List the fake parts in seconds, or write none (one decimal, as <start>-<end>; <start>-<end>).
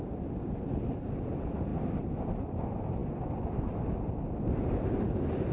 none